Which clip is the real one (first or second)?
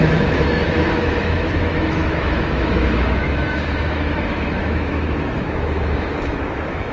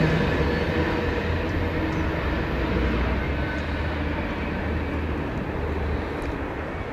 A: second